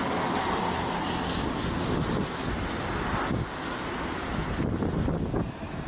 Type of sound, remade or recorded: recorded